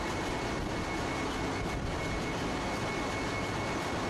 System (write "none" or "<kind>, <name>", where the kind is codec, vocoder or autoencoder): none